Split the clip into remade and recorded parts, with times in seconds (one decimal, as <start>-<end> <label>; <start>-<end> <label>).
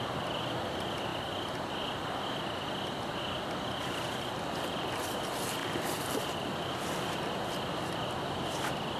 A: 0.0-5.6 recorded; 5.6-7.3 remade; 7.3-9.0 recorded